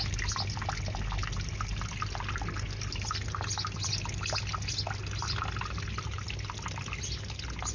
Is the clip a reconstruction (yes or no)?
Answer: no